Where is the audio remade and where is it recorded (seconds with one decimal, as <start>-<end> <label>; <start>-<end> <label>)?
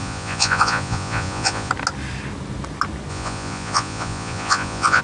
0.0-1.7 remade; 1.7-3.1 recorded; 3.1-5.0 remade